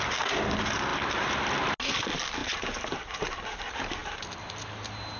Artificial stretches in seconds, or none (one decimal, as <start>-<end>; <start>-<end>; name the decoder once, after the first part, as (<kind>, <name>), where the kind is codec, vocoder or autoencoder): none